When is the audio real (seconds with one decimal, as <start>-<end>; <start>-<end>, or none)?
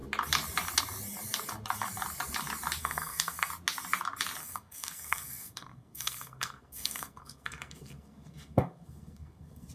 0.0-2.8; 3.5-4.4